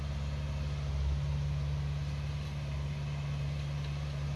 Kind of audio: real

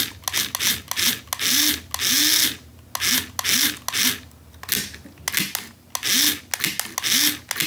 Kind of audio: real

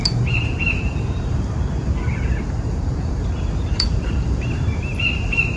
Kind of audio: fake